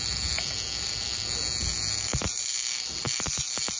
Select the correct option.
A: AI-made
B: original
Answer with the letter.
B